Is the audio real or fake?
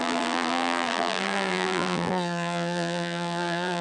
fake